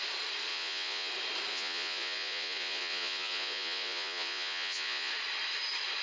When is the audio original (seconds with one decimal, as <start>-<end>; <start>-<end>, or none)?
0.0-0.5; 1.1-1.5; 5.1-6.0